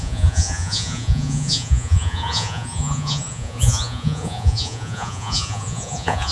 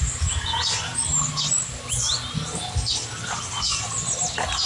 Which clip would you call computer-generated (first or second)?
first